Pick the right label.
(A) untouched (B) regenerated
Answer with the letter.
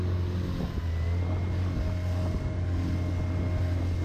A